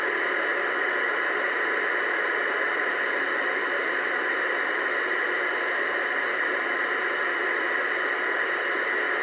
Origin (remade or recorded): recorded